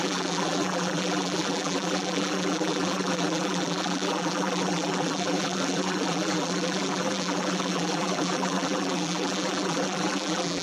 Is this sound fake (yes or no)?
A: yes